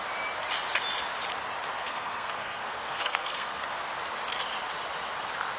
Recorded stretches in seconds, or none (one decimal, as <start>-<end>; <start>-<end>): 0.0-1.8; 3.7-5.6